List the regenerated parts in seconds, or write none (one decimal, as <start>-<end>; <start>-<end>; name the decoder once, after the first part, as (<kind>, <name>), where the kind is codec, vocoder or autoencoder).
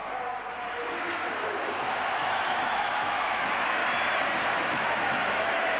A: 1.7-3.8 (autoencoder, DAC-VAE); 4.5-5.8